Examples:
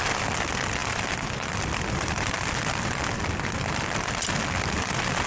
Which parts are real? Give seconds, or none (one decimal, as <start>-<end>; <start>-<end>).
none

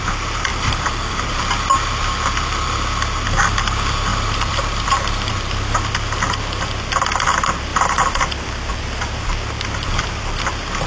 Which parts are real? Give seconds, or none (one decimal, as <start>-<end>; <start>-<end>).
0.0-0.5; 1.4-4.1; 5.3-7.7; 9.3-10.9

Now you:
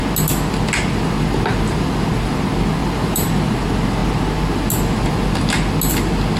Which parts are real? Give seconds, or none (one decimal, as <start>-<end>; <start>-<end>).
0.0-2.8; 3.3-6.4

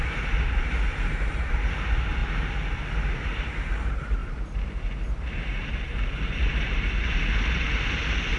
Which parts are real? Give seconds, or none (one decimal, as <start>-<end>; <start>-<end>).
2.2-3.1

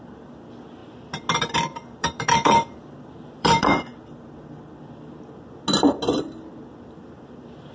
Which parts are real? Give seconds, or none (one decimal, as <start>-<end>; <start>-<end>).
0.8-1.4; 3.9-7.7